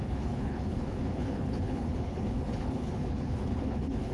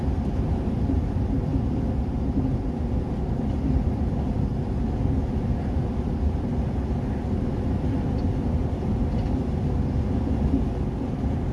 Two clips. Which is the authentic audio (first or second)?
second